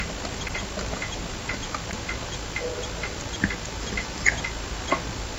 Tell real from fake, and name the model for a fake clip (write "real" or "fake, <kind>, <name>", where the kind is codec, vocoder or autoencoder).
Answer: real